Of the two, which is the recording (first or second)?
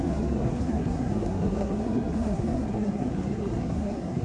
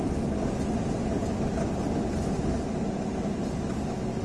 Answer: second